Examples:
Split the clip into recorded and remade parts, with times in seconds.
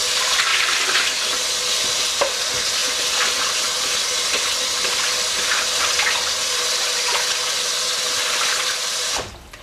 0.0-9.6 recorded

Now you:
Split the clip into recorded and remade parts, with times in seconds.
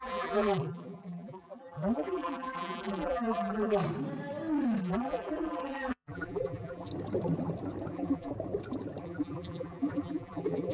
0.0-3.8 remade; 3.8-4.8 recorded; 4.8-6.9 remade; 6.9-7.9 recorded; 7.9-8.3 remade; 8.3-9.0 recorded; 9.0-10.7 remade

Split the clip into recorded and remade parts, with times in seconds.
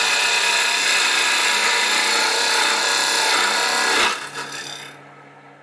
0.0-5.6 recorded